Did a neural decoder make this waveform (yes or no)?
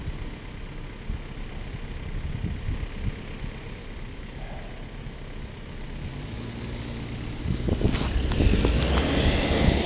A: no